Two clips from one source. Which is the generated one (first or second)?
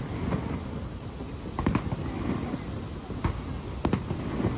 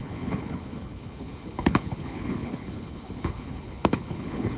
second